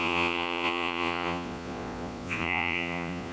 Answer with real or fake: fake